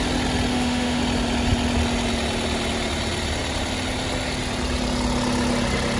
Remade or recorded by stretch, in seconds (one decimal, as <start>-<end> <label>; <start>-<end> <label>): 0.0-0.5 recorded; 0.5-1.0 remade; 1.0-6.0 recorded